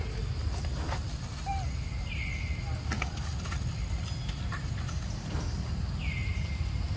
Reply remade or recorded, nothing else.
recorded